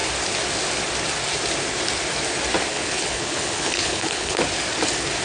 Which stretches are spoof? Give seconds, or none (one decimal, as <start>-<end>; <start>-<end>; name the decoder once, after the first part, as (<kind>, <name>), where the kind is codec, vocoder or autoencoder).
2.7-4.4 (codec, HILCodec)